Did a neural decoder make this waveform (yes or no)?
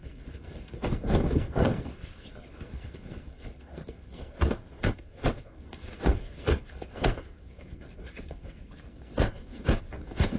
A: yes